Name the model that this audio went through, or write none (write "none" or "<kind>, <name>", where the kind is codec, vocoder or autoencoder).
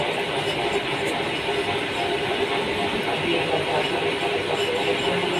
none